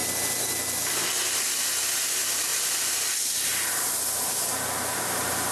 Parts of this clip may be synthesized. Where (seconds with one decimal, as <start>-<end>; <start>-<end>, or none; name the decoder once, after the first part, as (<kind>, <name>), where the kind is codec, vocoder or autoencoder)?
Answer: 2.5-4.0 (vocoder, BigVGAN v2)